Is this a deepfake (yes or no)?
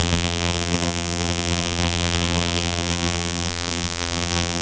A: yes